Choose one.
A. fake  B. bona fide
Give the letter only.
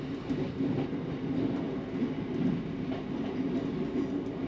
B